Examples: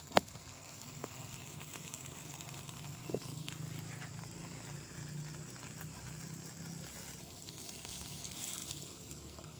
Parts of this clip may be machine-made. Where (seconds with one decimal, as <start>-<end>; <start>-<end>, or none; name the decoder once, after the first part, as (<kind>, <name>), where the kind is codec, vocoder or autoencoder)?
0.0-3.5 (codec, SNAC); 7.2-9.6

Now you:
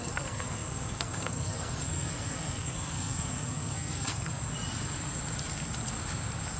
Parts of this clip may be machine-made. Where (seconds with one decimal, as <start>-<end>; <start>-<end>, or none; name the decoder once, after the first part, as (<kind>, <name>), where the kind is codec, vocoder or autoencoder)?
0.0-4.4 (codec, SNAC)

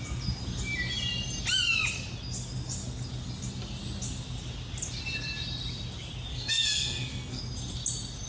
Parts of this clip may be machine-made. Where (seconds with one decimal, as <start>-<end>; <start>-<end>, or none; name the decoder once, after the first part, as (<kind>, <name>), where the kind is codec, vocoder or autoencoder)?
6.3-7.4 (codec, SNAC)

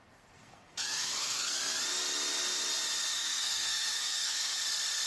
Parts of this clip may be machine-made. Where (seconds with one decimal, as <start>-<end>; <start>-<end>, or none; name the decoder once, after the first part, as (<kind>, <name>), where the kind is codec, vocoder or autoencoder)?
0.0-1.6 (codec, SNAC); 3.1-4.6

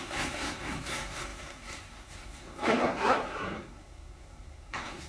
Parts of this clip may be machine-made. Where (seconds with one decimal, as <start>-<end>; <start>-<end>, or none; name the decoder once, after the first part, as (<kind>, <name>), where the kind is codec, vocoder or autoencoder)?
0.0-5.1 (codec, SNAC)